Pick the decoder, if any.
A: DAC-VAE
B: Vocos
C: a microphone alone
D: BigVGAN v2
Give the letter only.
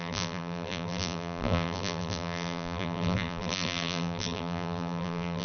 D